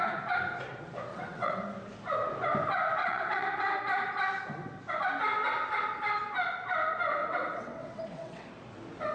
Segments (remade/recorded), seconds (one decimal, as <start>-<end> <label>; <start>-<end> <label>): 0.0-1.1 recorded; 1.1-1.6 remade; 1.6-3.0 recorded; 3.0-3.8 remade; 3.8-7.2 recorded; 7.2-8.5 remade; 8.5-9.1 recorded